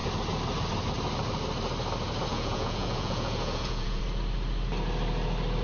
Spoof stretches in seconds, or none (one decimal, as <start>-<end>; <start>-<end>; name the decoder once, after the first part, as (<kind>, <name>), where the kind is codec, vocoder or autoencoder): 2.3-4.0 (vocoder, Vocos)